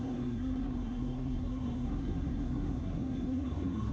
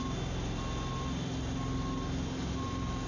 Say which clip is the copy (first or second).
first